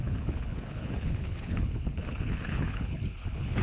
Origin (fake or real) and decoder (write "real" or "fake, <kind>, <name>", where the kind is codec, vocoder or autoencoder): fake, codec, HILCodec